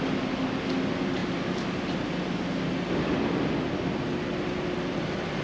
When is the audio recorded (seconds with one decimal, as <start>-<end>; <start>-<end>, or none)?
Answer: 0.0-5.4